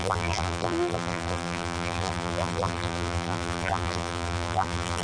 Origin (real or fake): fake